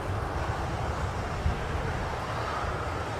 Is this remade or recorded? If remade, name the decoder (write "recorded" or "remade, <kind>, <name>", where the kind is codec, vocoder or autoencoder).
remade, vocoder, BigVGAN v2